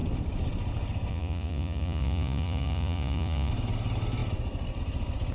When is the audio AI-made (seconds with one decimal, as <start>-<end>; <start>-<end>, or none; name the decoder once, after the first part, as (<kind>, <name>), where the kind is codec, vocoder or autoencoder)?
1.1-3.5 (vocoder, Vocos)